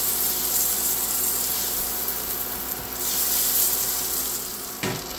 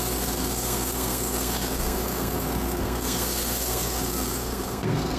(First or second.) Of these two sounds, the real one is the first